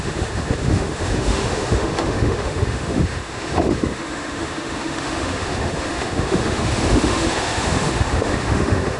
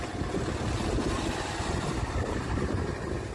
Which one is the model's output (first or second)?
first